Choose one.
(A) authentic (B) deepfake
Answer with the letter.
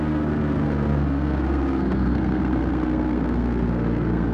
B